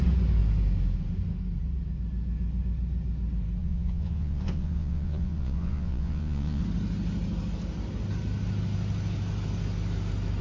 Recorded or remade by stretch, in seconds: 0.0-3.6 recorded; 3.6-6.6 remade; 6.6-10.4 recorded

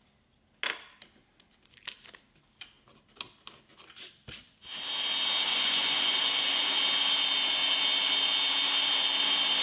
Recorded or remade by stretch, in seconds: 0.0-5.5 recorded; 5.5-6.7 remade; 6.7-9.6 recorded